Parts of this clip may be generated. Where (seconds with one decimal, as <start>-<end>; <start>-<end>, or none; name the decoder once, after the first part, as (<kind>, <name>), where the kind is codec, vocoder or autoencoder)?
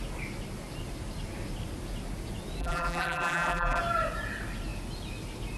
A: 2.6-3.8 (vocoder, BigVGAN v2)